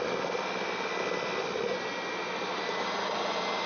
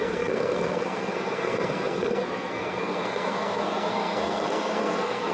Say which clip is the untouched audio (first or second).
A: first